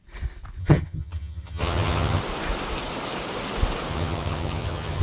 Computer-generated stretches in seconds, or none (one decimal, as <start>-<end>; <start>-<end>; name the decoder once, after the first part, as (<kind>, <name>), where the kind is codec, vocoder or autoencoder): 0.6-2.2 (vocoder, HiFi-GAN); 3.9-5.0